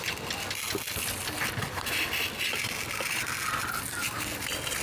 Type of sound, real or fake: real